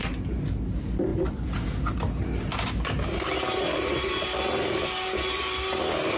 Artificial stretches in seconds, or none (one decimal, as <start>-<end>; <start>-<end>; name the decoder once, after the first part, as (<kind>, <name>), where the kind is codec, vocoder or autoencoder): none